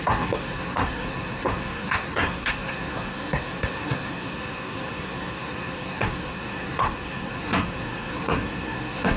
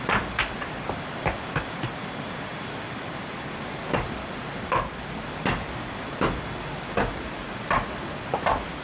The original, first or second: second